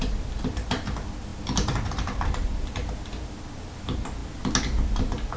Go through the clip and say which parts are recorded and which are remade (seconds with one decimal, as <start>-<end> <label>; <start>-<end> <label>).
0.0-5.4 recorded